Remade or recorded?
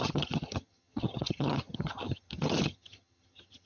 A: remade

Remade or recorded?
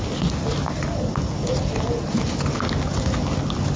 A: recorded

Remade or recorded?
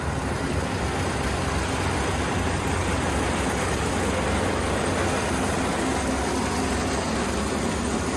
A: recorded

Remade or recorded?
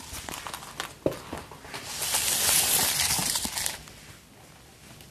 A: recorded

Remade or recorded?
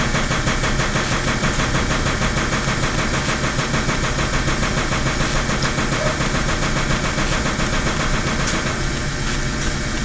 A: recorded